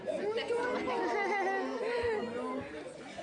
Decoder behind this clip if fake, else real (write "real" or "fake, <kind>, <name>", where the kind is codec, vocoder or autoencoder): real